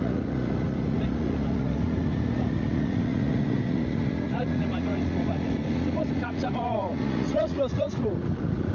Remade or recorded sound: remade